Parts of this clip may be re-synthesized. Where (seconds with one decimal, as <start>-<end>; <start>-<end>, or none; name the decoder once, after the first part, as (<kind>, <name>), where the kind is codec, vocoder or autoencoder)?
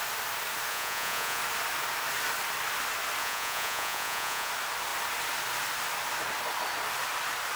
0.7-1.4 (vocoder, Vocos); 3.2-4.5